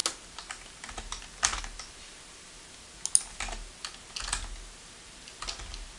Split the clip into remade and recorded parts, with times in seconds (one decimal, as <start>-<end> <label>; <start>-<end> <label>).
0.0-6.0 recorded